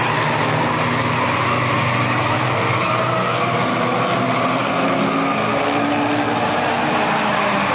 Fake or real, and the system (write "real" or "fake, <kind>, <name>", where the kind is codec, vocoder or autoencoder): real